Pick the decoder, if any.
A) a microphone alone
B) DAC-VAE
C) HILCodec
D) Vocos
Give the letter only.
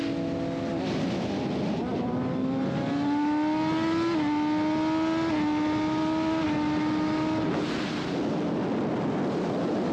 A